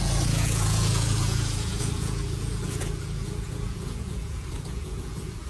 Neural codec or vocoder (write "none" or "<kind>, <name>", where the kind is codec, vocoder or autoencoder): vocoder, Vocos